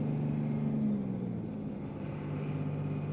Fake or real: real